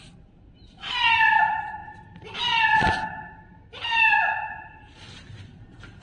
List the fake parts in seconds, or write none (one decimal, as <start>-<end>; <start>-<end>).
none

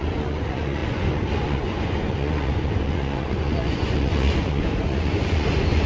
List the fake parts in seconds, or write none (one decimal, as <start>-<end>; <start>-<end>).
0.0-5.9

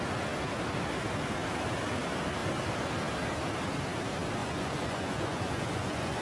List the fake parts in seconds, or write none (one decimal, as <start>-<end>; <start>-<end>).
4.4-6.2